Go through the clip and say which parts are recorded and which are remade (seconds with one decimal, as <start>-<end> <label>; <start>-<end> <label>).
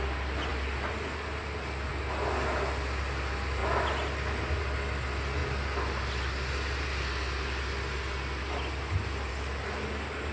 0.0-10.3 recorded